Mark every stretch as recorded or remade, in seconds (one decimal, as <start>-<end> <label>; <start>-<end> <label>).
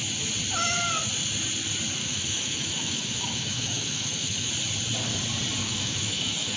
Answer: 0.0-2.0 recorded; 2.0-4.5 remade; 4.5-5.6 recorded; 5.6-6.6 remade